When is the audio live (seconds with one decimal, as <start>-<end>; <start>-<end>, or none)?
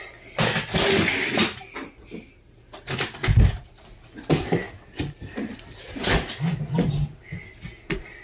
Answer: 0.0-8.2